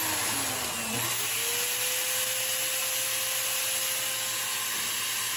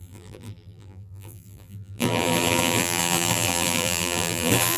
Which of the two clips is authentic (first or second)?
first